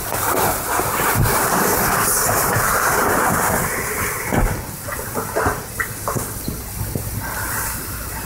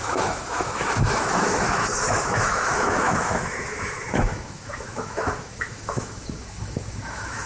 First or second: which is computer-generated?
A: second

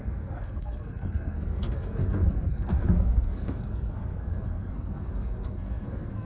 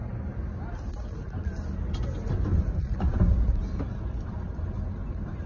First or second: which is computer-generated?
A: first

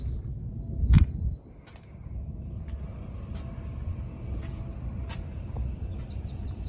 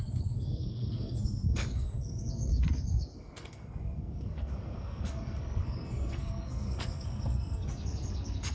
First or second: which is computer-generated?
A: second